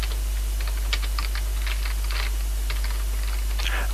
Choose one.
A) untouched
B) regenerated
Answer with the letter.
A